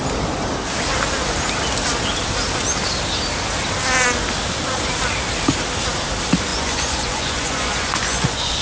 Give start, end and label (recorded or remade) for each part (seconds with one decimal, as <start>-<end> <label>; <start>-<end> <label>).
0.0-6.5 recorded; 6.5-8.6 remade